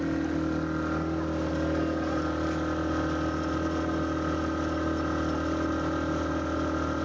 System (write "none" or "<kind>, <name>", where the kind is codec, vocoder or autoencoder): none